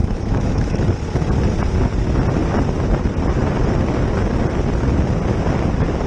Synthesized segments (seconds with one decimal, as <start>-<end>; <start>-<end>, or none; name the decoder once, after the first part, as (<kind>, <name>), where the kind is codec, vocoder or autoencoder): 0.0-0.9 (autoencoder, DAC-VAE)